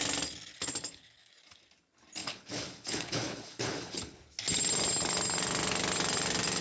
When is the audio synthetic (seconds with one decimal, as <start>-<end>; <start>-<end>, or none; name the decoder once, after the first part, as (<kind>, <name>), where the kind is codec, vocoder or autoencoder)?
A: 0.5-1.3 (codec, HILCodec); 2.2-4.2